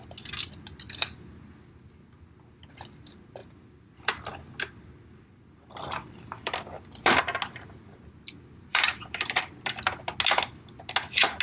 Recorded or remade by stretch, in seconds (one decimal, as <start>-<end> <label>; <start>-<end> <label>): 0.0-3.4 recorded; 3.4-7.2 remade; 7.2-8.7 recorded; 8.7-9.8 remade; 9.8-11.4 recorded